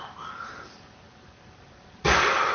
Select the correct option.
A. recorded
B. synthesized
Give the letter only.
B